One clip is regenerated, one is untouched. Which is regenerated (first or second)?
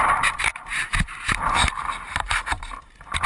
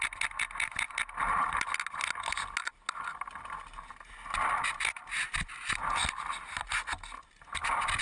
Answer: first